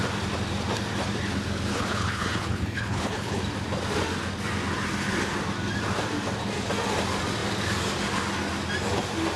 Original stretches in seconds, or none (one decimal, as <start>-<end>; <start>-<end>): 0.0-1.7; 3.4-9.4